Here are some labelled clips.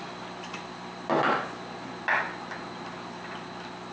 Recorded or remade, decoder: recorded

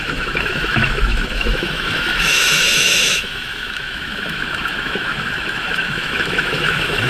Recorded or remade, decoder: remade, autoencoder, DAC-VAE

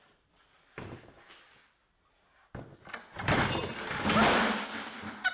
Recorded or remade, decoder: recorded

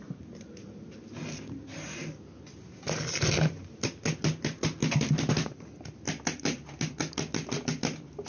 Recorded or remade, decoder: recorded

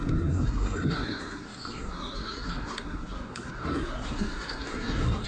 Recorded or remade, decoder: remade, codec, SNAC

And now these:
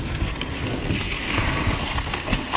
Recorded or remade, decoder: remade, codec, SNAC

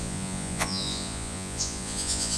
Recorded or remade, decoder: remade, vocoder, Vocos